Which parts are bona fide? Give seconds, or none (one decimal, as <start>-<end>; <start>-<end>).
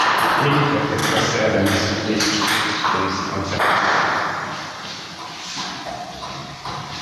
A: 0.0-1.0; 4.3-6.4